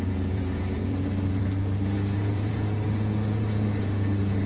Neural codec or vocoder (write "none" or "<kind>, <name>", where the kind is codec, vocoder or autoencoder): vocoder, Vocos